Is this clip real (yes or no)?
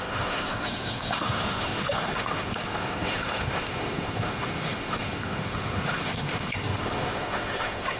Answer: no